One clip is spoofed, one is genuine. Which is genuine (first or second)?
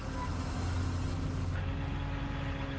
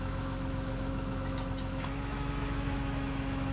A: first